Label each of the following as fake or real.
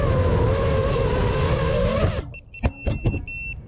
real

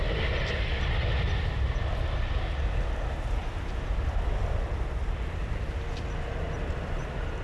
real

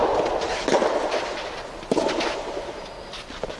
real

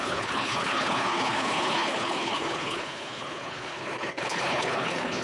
fake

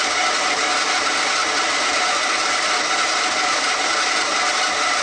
real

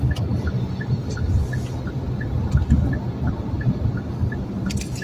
real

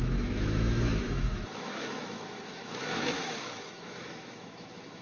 fake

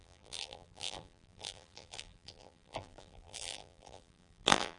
fake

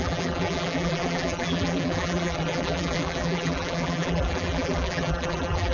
fake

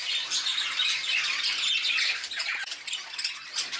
real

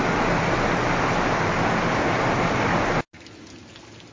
real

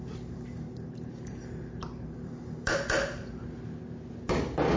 real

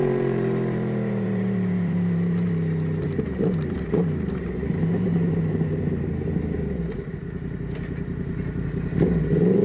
fake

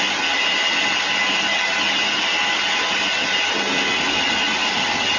real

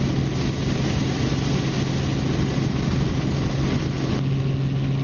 real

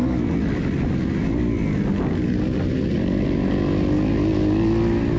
real